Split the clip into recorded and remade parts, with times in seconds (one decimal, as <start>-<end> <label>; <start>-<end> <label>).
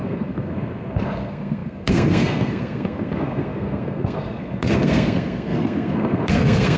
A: 0.0-6.8 remade